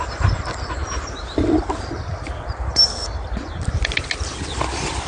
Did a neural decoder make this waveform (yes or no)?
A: no